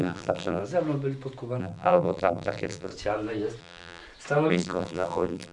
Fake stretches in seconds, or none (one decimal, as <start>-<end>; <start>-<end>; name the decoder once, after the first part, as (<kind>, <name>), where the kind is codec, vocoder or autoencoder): 0.0-0.6 (vocoder, BigVGAN v2); 1.6-2.9; 3.6-4.0; 4.5-5.5